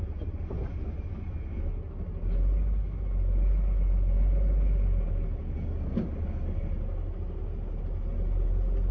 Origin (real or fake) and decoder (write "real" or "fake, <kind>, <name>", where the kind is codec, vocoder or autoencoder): real